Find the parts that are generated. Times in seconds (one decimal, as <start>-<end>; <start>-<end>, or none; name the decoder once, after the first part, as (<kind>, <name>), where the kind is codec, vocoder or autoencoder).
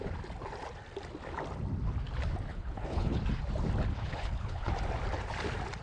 2.5-3.2 (codec, HILCodec); 3.9-4.7